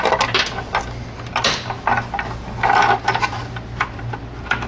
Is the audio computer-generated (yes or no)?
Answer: no